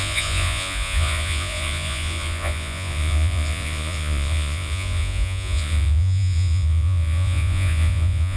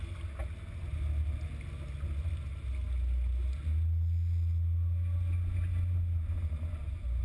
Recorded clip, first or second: second